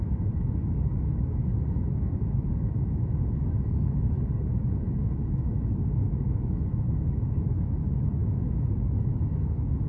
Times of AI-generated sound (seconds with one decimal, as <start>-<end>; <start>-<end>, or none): 0.0-9.9